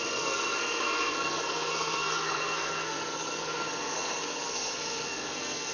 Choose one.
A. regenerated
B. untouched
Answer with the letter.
A